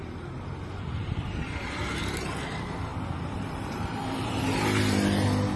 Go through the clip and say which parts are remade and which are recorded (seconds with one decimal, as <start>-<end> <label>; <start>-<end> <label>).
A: 0.0-1.0 recorded; 1.0-1.8 remade; 1.8-2.9 recorded; 2.9-4.5 remade; 4.5-5.6 recorded